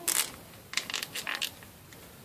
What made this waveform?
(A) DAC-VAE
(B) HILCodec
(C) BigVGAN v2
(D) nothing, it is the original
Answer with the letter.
D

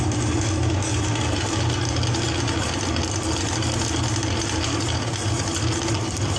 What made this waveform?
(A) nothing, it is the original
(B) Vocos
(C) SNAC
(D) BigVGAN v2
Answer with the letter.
A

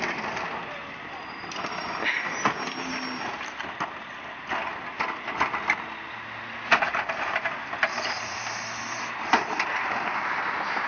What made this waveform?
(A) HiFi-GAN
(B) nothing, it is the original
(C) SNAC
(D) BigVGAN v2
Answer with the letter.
B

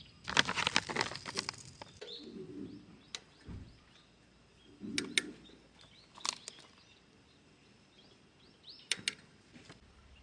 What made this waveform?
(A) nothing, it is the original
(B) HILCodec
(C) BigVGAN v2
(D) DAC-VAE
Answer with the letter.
A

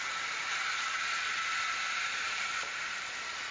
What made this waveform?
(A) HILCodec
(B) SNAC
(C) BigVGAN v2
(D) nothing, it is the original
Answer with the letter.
C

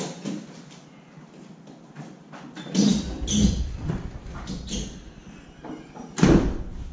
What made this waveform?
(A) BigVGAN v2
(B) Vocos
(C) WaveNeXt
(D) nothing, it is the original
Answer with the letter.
D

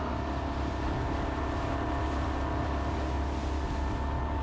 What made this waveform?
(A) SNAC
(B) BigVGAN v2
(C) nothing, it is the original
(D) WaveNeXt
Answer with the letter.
C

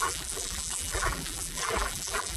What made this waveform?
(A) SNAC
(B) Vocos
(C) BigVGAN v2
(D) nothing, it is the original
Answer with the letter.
C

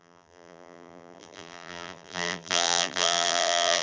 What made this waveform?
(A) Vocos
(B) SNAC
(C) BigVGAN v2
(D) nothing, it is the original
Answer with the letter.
C